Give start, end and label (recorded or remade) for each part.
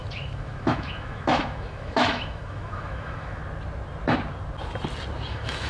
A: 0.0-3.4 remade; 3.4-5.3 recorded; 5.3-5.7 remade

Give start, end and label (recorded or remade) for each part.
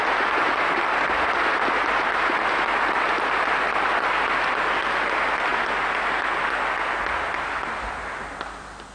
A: 0.0-8.9 recorded